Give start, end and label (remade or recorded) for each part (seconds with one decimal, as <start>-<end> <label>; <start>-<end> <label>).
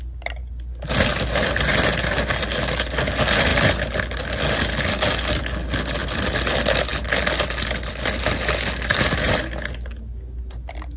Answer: 0.0-11.0 recorded